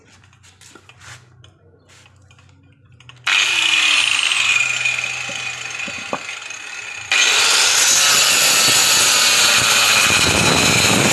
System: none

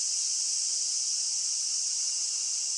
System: none